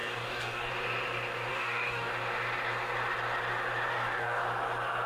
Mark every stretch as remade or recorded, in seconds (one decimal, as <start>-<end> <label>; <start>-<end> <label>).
0.0-0.7 remade; 0.7-1.5 recorded; 1.5-2.1 remade; 2.1-3.9 recorded; 3.9-4.4 remade; 4.4-5.1 recorded